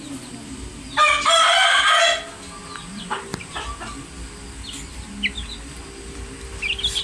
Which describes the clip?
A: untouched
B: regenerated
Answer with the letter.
A